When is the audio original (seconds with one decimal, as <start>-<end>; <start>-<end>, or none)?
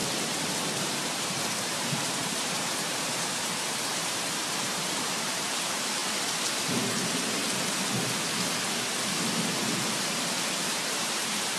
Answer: 0.0-0.8; 6.0-10.7